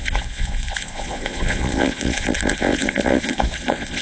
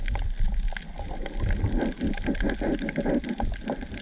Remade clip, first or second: first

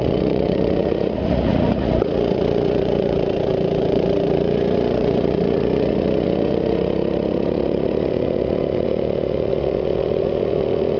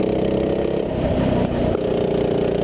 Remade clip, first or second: first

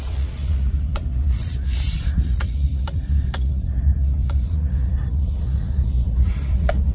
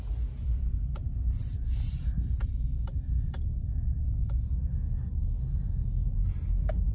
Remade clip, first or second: first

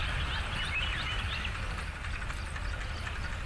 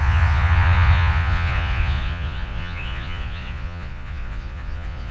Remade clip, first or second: second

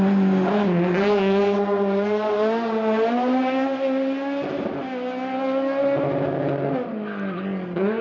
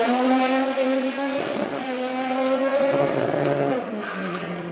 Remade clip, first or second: second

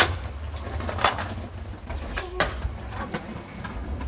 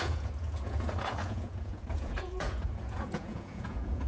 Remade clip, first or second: second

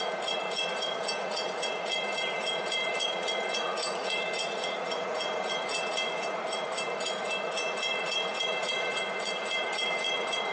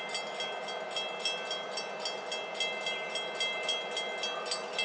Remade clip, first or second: first